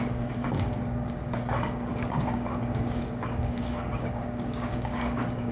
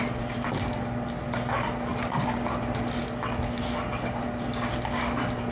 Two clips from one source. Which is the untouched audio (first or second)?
second